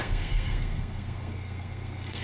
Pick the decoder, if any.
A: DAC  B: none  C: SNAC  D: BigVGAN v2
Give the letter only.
C